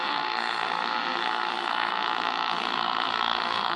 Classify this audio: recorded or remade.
remade